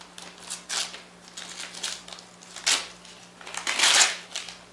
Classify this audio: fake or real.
real